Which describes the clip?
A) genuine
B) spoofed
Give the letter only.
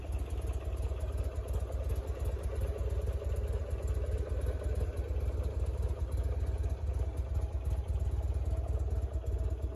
A